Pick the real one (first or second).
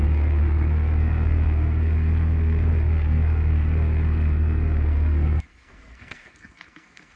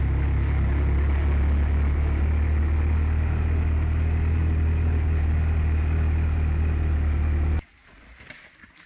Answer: second